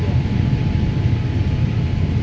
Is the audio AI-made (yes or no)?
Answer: no